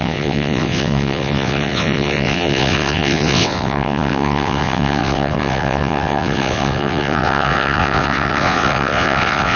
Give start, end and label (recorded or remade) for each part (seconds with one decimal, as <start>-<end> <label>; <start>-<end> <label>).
0.0-9.6 remade